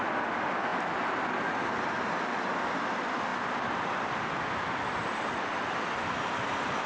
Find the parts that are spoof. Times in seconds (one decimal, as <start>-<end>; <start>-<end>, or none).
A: none